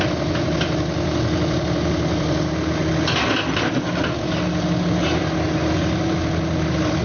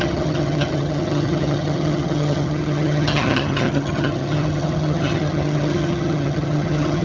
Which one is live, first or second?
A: first